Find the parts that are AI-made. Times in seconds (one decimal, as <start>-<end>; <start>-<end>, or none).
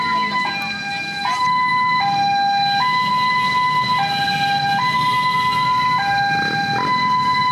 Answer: none